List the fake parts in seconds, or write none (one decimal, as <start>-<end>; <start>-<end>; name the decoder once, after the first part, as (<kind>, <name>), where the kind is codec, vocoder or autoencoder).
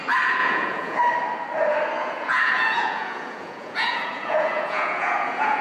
0.4-1.0 (vocoder, Vocos); 2.0-5.6